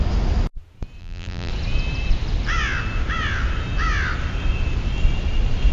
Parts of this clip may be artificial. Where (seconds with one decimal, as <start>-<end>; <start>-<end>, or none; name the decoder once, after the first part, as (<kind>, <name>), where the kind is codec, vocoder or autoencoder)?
1.0-1.5 (vocoder, BigVGAN v2)